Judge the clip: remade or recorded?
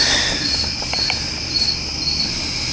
recorded